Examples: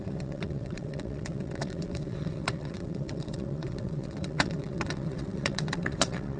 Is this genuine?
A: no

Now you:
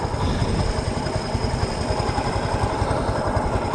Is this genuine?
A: no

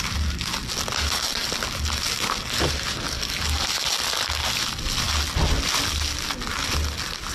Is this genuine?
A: yes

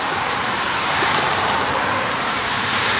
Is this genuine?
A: no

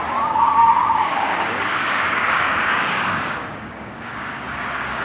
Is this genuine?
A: no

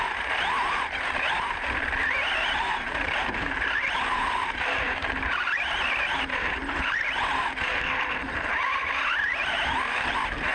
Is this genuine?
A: no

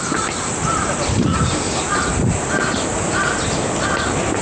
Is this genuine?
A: yes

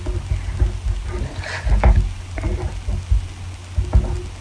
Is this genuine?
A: yes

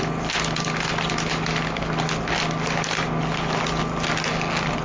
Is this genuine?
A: yes